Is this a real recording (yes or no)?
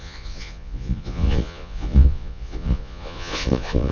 no